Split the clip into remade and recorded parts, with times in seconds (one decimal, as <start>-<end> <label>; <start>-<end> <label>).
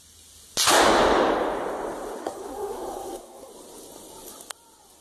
0.0-2.2 recorded; 2.2-3.5 remade; 3.5-5.0 recorded